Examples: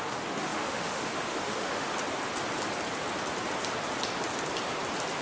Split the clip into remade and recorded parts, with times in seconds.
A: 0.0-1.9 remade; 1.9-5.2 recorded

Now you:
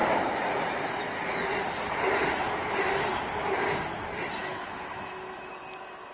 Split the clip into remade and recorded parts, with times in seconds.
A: 0.0-4.4 recorded; 4.4-5.5 remade; 5.5-6.1 recorded

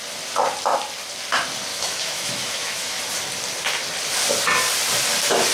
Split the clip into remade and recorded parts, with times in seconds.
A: 0.0-1.7 recorded; 1.7-3.0 remade; 3.0-5.5 recorded

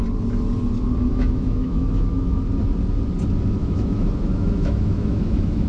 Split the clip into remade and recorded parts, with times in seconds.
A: 0.0-1.1 recorded; 1.1-2.4 remade; 2.4-3.6 recorded; 3.6-5.7 remade